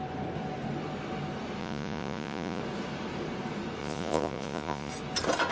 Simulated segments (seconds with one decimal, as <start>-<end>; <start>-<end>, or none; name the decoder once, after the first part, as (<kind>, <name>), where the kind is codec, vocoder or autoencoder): 1.6-2.6 (vocoder, Vocos); 3.8-4.9